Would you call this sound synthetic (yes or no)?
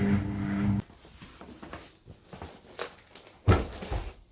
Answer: no